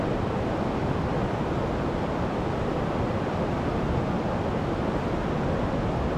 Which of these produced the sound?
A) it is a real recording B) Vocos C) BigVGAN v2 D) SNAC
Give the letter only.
A